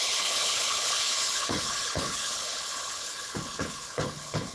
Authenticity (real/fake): fake